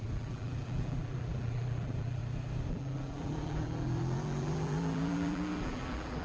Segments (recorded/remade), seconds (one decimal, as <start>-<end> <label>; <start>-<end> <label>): 0.0-2.2 remade; 2.2-2.7 recorded; 2.7-6.2 remade